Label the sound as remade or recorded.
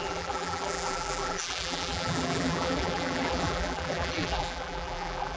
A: remade